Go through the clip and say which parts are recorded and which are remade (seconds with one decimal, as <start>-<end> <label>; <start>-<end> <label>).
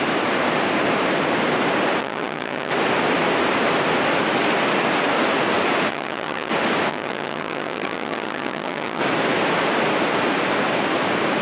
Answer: 0.0-2.0 recorded; 2.0-2.7 remade; 2.7-5.9 recorded; 5.9-6.5 remade; 6.5-6.9 recorded; 6.9-9.0 remade; 9.0-11.4 recorded